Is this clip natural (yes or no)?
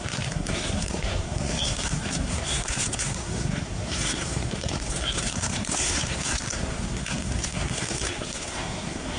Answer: no